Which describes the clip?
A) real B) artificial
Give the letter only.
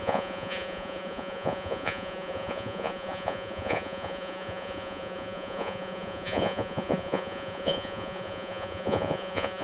B